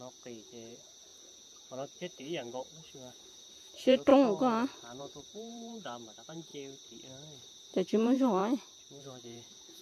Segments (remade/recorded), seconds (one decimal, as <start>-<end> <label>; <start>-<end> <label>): 0.0-4.1 remade; 4.1-5.0 recorded; 5.0-6.5 remade; 6.5-7.4 recorded; 7.4-8.4 remade; 8.4-9.0 recorded; 9.0-9.8 remade